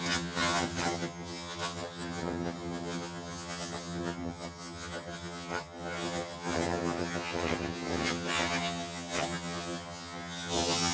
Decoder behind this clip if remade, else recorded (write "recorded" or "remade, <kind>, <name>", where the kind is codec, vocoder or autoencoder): remade, vocoder, HiFi-GAN